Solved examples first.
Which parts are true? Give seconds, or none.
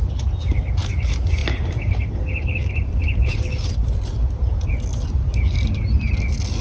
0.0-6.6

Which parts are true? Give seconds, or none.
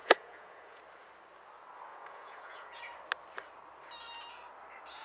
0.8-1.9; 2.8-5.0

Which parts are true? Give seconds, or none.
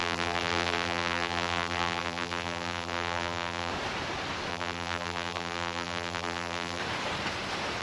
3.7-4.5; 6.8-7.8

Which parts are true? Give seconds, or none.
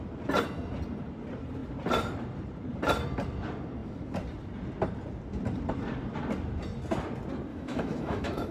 0.0-7.5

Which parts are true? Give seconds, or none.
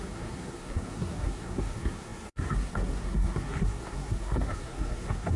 none